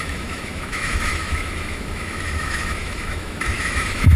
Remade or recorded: remade